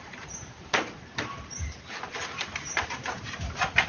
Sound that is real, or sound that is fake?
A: fake